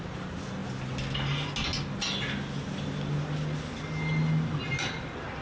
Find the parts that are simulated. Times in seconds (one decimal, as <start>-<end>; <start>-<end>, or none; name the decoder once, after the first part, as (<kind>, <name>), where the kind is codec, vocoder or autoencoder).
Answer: none